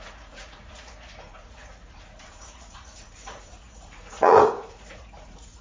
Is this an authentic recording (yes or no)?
no